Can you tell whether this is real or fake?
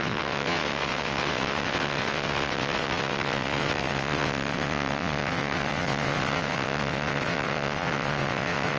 fake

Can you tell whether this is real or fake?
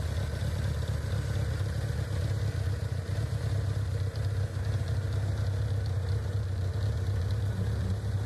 real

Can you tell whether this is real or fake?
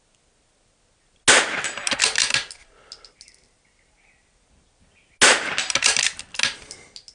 real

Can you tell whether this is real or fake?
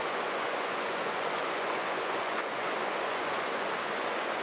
fake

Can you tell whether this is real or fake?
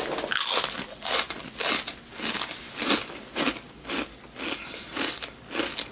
real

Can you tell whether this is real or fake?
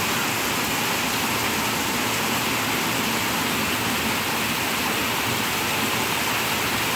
real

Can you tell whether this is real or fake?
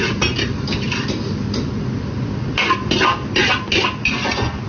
real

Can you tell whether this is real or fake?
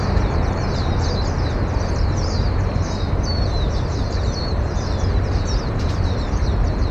fake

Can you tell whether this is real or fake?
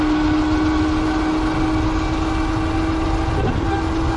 real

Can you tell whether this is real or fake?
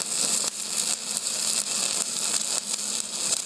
real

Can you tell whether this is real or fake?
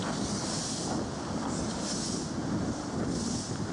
real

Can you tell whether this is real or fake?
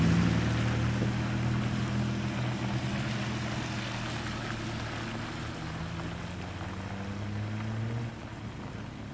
real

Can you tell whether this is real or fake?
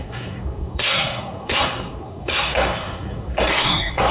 fake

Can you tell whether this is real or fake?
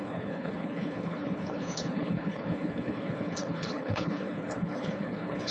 fake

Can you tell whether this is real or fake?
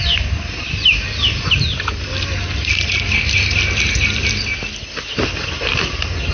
real